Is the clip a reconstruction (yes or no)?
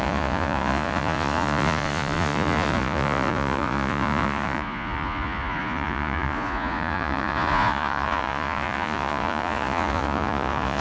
yes